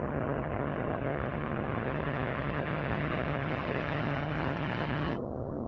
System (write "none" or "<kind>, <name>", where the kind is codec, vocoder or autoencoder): vocoder, HiFi-GAN